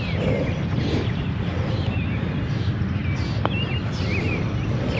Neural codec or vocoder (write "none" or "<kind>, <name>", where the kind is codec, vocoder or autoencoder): none